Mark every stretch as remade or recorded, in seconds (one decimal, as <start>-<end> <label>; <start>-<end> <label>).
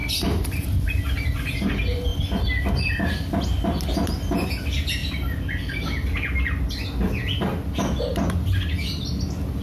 0.0-1.0 remade; 1.0-9.6 recorded